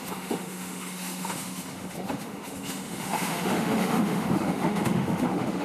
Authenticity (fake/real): fake